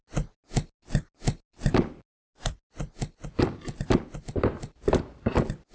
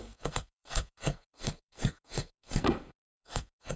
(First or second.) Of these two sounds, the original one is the first